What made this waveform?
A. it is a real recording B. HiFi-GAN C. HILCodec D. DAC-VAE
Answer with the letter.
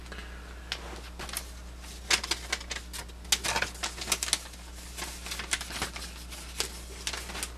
A